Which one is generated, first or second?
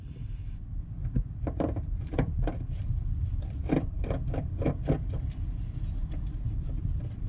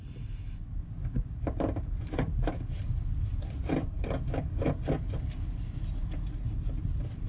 first